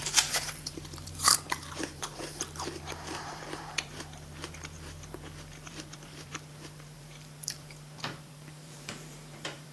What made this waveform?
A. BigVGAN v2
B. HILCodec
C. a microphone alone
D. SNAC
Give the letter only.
A